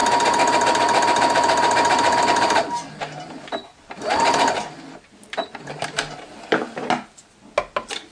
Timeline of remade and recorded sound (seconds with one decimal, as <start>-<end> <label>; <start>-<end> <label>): 0.0-8.1 recorded